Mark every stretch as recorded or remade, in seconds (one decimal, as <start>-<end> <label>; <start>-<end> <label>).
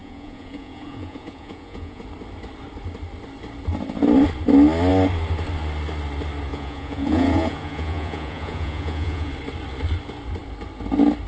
0.0-2.0 remade; 2.0-6.5 recorded; 6.5-9.3 remade; 9.3-11.3 recorded